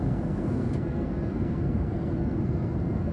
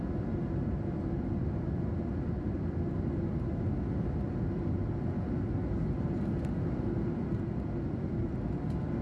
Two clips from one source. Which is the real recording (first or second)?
second